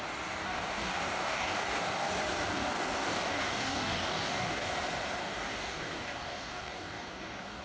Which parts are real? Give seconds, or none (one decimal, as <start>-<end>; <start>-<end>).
0.0-0.4; 2.1-2.5; 4.7-5.2